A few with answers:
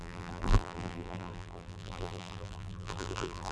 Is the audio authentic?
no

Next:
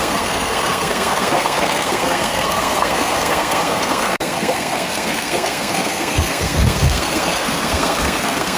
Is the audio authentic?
no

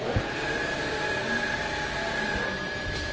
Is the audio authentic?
yes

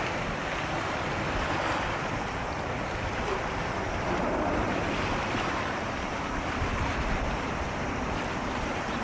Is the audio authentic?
yes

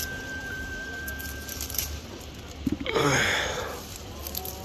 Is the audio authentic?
yes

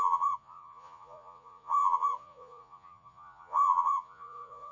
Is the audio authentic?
no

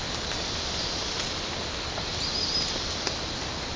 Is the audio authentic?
yes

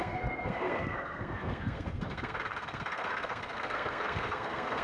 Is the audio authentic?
no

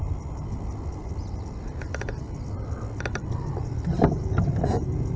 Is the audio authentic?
yes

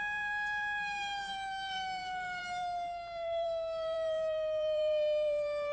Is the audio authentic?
no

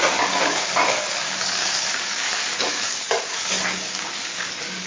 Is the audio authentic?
no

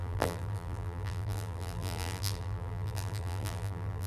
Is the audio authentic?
no